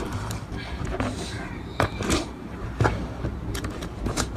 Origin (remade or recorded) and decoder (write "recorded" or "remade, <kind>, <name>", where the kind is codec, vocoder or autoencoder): remade, vocoder, BigVGAN v2